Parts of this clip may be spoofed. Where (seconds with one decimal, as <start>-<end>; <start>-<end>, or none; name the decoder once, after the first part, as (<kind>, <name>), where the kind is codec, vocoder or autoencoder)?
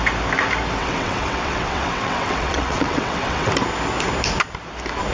0.8-3.5 (vocoder, WaveNeXt)